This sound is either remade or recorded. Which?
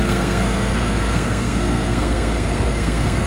remade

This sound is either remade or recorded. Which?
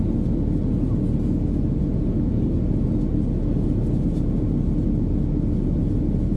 recorded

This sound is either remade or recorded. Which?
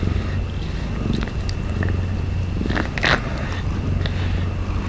recorded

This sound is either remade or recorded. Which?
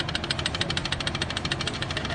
recorded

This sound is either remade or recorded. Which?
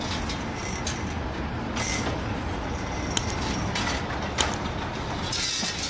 recorded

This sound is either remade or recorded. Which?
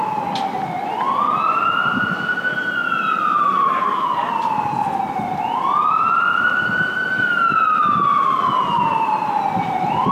recorded